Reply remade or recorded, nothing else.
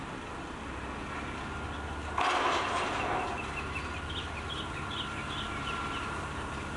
recorded